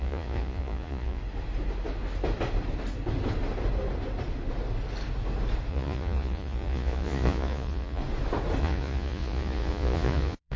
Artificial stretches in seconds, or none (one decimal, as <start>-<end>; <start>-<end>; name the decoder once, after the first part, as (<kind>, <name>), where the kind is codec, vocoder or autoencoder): 0.0-1.2 (vocoder, Vocos); 5.7-8.0; 8.6-10.6